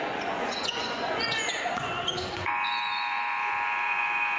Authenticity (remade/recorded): remade